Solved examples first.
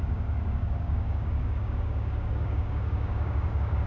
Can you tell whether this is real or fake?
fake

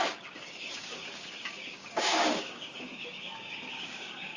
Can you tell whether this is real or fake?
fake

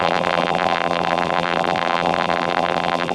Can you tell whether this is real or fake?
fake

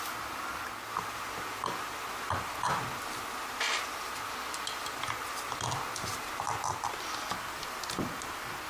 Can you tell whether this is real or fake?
real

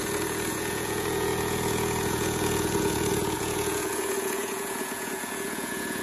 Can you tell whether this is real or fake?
fake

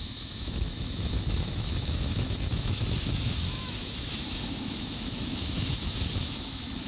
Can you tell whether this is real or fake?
fake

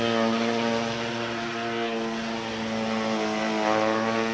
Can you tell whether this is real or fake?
real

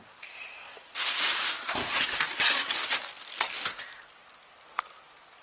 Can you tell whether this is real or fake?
real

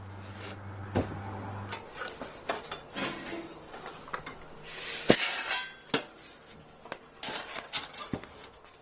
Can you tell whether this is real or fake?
real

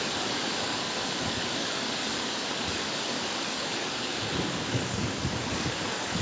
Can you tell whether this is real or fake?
fake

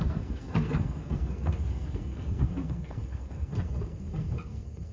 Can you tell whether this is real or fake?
fake